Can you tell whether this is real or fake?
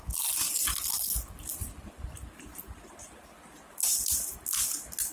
real